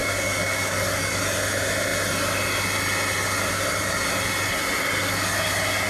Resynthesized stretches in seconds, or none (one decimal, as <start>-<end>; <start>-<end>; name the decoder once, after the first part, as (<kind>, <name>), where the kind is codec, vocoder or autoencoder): 0.0-1.2 (codec, DAC)